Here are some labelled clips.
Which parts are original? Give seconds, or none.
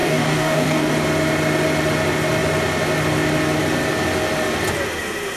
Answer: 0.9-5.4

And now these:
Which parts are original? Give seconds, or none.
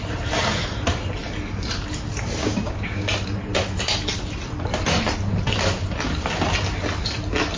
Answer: 0.0-2.4; 3.1-7.6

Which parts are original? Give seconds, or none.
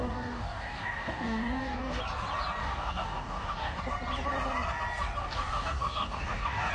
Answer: 2.0-2.6; 3.8-5.2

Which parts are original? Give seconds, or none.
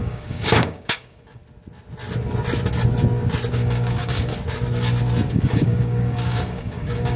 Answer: 1.4-3.5; 4.3-5.3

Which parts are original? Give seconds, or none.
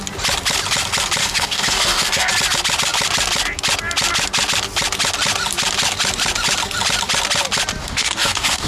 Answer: 0.0-1.2; 2.3-7.8